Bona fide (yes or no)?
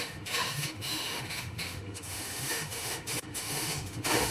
no